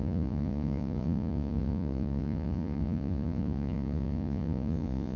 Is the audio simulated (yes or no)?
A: yes